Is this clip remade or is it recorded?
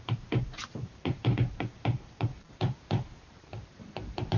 remade